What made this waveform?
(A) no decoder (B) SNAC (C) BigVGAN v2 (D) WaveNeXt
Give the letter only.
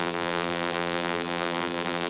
C